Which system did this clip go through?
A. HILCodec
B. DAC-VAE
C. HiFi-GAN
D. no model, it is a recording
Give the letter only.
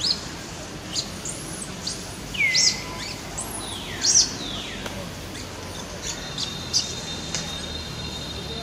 D